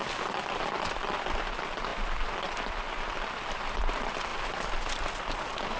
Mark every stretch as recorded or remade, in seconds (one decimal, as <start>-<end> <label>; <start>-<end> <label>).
0.0-0.8 recorded; 0.8-4.3 remade; 4.3-5.8 recorded